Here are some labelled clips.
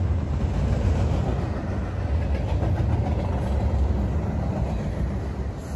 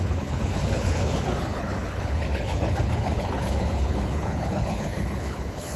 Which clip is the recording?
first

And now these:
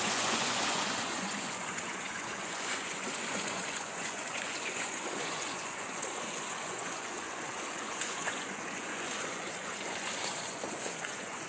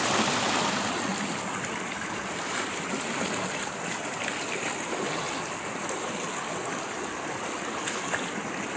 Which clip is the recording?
second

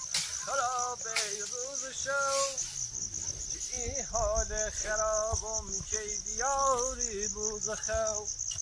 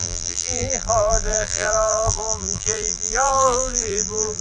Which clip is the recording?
first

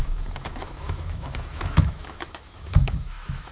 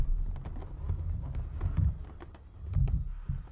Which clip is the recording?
second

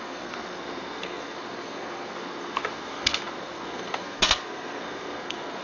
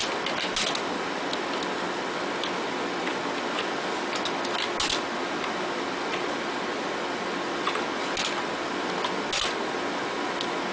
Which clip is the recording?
second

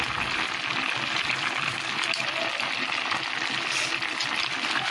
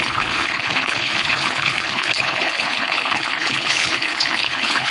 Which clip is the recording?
first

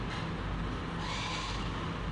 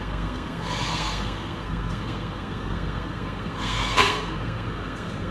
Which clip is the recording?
first